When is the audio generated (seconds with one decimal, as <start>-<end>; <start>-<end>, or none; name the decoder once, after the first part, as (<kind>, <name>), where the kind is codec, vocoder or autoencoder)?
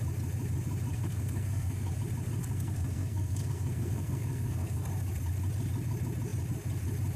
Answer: 0.9-1.9 (codec, SNAC); 2.4-4.9